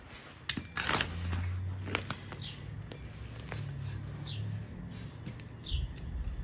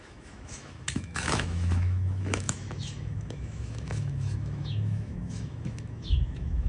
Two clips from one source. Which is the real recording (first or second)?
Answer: first